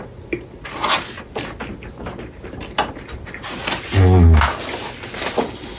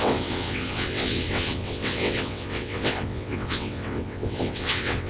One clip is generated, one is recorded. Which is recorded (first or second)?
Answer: first